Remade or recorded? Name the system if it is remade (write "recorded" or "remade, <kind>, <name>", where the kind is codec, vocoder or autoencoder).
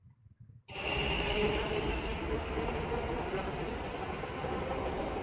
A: recorded